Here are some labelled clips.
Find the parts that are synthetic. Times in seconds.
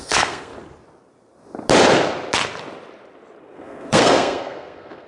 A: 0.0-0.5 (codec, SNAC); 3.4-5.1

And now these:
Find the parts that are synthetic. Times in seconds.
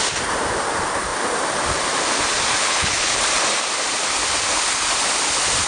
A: 2.6-3.2 (codec, HILCodec)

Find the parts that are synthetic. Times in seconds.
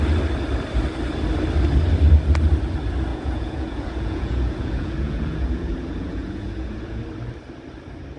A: 3.1-7.0 (vocoder, Vocos)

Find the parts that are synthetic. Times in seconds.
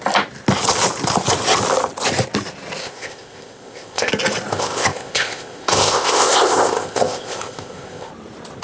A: 2.8-4.1 (codec, ZipCodec); 4.5-8.1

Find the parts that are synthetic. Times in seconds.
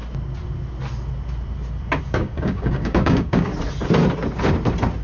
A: 2.0-3.5 (codec, DAC)